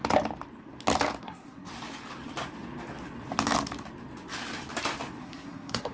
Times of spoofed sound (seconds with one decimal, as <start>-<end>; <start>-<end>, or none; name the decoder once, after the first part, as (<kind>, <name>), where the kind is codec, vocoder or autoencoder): 1.2-1.7 (codec, SNAC); 5.2-5.9